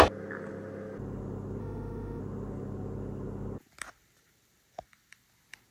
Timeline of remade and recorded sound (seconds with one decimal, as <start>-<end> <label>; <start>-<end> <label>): 0.0-1.6 recorded; 1.6-2.2 remade; 2.2-5.7 recorded